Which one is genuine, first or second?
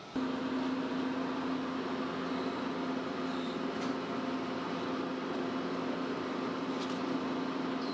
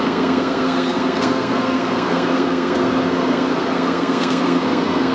first